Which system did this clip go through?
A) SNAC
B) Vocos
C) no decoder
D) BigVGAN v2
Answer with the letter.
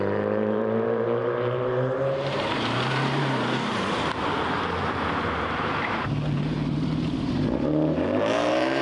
D